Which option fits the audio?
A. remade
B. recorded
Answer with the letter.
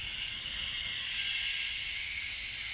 B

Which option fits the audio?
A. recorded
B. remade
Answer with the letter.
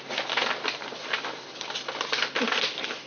A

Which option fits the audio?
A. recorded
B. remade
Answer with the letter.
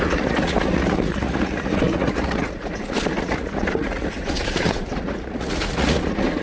B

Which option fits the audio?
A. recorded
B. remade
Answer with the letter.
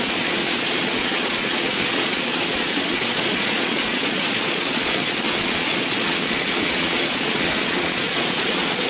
B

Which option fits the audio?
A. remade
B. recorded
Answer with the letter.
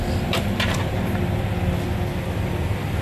B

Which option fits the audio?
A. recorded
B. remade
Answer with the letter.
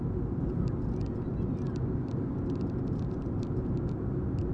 A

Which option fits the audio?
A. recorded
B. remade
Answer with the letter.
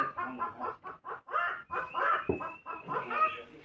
A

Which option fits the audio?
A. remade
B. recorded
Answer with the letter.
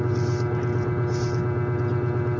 B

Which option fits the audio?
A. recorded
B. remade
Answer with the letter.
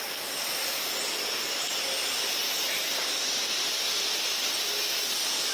A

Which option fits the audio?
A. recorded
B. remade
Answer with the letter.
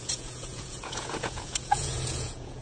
B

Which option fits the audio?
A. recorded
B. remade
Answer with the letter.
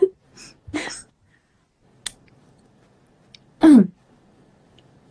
A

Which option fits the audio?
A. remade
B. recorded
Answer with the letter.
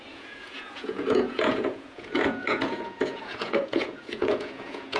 A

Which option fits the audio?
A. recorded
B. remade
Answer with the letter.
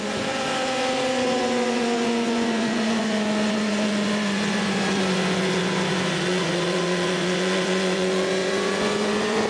B